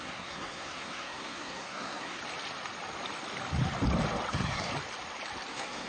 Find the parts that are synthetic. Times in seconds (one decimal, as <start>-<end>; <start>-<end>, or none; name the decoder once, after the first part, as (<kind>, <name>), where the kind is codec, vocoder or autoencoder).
0.0-2.2 (codec, SNAC); 4.3-4.7; 5.5-5.9